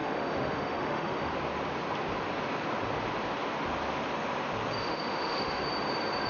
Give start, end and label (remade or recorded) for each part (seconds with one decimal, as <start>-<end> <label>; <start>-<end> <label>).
0.0-1.3 remade; 1.3-4.8 recorded; 4.8-5.6 remade; 5.6-6.3 recorded